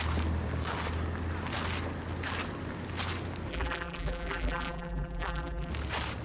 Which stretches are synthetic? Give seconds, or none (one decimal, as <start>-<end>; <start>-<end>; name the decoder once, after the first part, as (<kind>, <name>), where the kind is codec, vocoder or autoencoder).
3.5-5.7 (vocoder, BigVGAN v2)